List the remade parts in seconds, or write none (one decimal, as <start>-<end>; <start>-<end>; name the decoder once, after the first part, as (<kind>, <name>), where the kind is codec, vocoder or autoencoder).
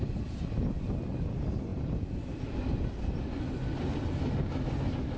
none